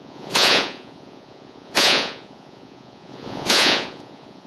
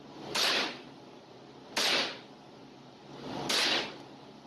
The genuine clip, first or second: second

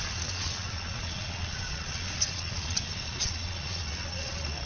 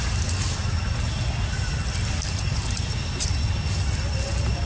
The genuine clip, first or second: second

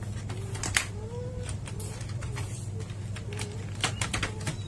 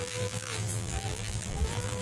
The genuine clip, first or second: first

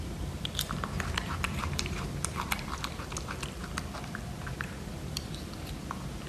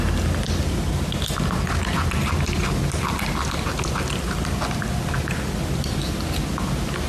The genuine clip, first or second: second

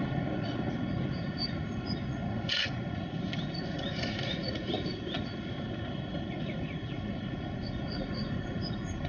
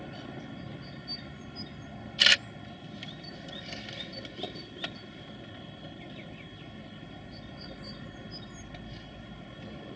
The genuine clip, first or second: second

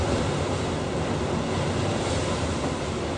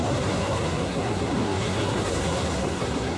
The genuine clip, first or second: first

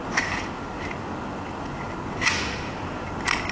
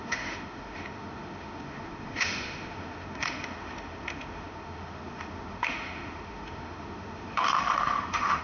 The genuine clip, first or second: first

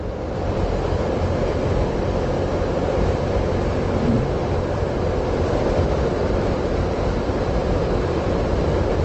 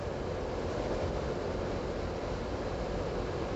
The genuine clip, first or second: second